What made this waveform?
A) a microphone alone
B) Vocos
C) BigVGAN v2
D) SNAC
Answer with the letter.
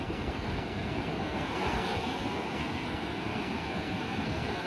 D